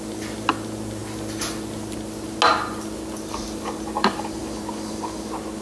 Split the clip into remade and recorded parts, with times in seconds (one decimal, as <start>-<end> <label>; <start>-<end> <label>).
0.0-5.6 recorded